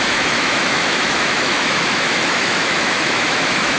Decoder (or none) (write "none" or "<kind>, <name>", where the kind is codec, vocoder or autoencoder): autoencoder, DAC-VAE